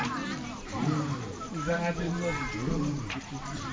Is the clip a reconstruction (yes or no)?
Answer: yes